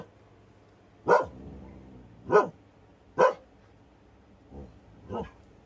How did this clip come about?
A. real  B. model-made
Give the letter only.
A